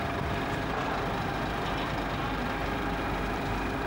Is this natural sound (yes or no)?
yes